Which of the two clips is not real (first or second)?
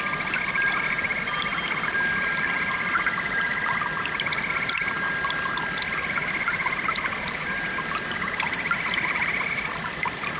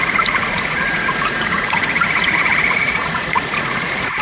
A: second